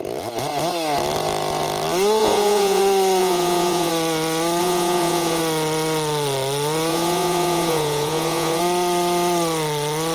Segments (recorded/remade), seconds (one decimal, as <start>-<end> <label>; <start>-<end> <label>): 0.0-2.2 recorded; 2.2-2.8 remade; 2.8-3.2 recorded; 3.2-3.9 remade; 3.9-4.6 recorded; 4.6-5.4 remade; 5.4-6.9 recorded; 6.9-8.6 remade; 8.6-10.1 recorded

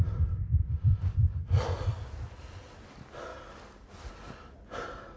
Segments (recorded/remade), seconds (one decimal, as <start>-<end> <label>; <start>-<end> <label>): 0.0-5.2 recorded

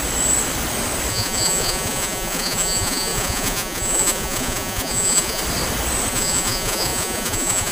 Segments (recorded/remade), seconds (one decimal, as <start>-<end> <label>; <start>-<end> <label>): 0.0-1.1 recorded; 1.1-5.4 remade; 5.4-6.1 recorded; 6.1-7.7 remade